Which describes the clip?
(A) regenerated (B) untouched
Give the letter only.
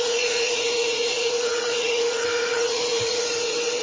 A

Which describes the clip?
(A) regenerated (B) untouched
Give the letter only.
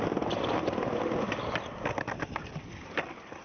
B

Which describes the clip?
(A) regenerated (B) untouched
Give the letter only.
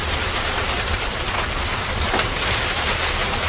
B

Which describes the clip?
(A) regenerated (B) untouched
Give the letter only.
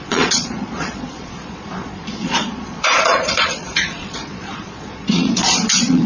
A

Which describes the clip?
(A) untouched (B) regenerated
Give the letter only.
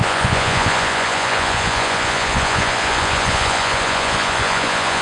B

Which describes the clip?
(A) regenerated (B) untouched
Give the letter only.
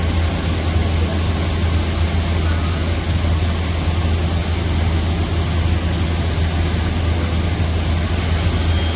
B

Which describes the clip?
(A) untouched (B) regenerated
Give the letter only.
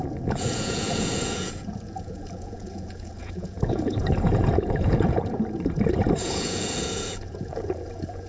B